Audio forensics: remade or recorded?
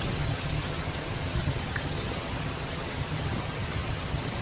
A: remade